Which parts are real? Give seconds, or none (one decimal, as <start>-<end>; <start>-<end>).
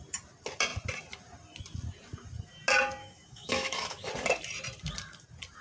0.0-3.0; 4.1-5.6